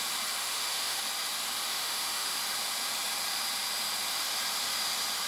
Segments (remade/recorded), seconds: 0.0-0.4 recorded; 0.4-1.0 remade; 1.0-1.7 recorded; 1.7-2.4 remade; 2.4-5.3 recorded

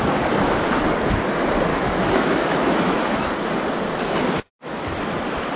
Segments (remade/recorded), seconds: 0.0-1.7 recorded; 1.7-3.3 remade; 3.3-5.6 recorded

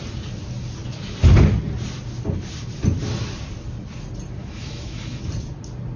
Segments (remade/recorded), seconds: 0.0-4.4 recorded; 4.4-5.2 remade; 5.2-6.0 recorded